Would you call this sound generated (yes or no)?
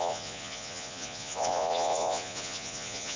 yes